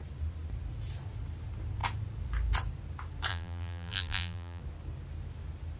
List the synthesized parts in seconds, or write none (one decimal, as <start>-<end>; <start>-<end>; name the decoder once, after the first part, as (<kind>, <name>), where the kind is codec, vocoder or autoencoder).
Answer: 3.3-4.6 (vocoder, BigVGAN v2)